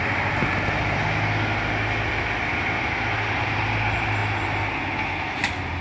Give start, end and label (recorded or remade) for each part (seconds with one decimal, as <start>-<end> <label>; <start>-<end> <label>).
0.0-1.0 remade; 1.0-3.4 recorded; 3.4-4.2 remade; 4.2-5.2 recorded; 5.2-5.8 remade